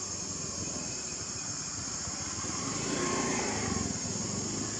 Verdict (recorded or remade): recorded